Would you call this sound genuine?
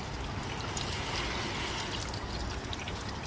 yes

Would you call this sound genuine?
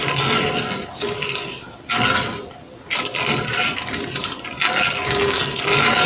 yes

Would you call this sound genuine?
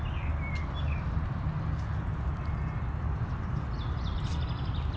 yes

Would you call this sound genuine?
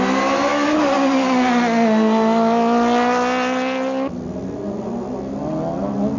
yes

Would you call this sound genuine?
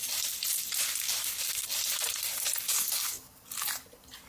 yes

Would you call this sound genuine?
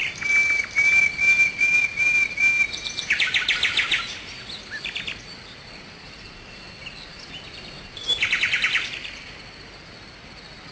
yes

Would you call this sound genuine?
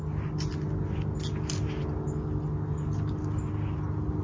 yes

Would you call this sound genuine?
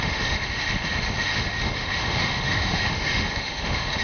no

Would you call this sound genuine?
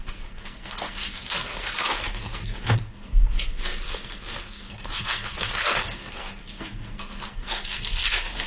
no